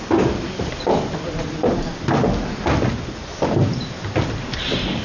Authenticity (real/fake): real